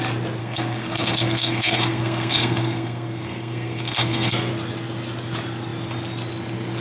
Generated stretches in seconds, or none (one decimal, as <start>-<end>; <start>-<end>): 0.4-4.5